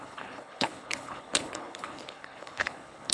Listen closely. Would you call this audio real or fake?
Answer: fake